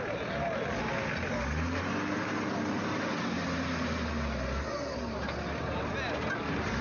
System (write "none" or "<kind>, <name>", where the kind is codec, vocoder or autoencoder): none